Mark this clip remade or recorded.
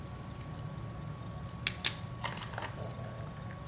recorded